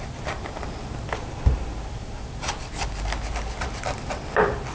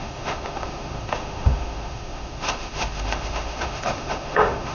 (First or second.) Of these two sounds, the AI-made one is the second